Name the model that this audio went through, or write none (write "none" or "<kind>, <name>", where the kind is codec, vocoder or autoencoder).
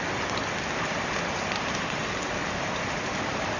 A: none